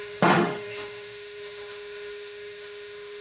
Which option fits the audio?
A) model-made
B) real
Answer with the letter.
A